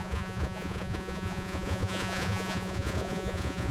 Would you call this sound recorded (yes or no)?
no